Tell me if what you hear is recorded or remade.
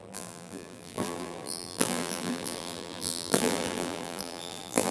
remade